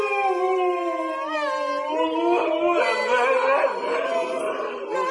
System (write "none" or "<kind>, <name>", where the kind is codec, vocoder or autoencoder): none